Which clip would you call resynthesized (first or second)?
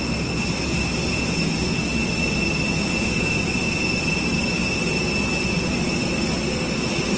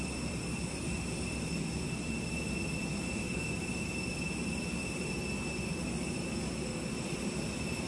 second